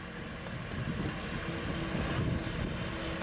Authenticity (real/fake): real